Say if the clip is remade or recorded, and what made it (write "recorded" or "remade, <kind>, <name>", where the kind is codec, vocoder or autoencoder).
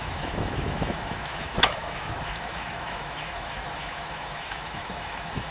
remade, autoencoder, DAC-VAE